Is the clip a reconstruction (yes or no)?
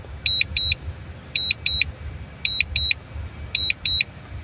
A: no